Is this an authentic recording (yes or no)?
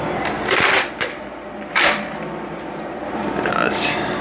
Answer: no